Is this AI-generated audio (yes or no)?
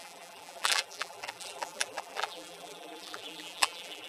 yes